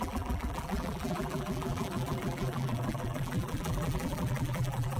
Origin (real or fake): fake